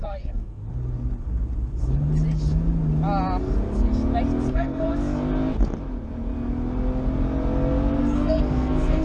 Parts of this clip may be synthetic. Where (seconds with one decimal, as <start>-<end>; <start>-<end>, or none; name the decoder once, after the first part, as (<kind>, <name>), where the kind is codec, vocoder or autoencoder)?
0.0-0.6 (codec, SNAC); 4.5-4.9; 8.0-9.0